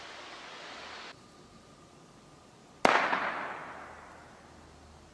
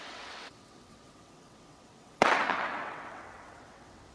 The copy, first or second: second